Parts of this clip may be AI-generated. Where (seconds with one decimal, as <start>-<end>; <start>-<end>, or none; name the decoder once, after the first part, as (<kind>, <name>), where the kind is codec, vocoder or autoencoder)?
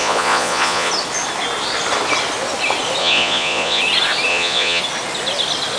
0.0-0.9 (vocoder, Vocos); 3.0-3.8; 4.3-4.8